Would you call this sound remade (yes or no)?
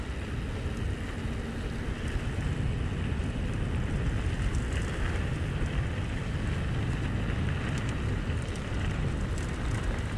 no